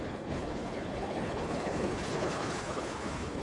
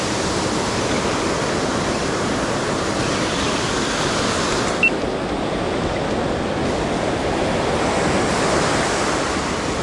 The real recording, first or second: second